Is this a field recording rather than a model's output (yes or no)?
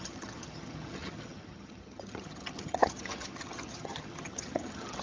no